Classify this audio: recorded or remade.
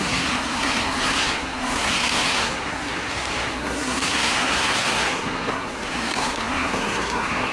remade